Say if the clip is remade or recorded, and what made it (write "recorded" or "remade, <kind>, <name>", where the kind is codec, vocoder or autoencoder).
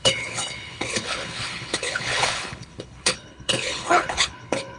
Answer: remade, codec, HILCodec